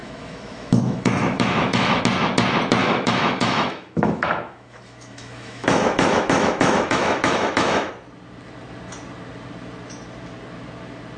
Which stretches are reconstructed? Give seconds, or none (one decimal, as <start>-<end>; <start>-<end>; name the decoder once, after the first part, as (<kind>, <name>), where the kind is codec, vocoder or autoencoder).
0.0-2.0 (autoencoder, DAC-VAE); 2.8-7.9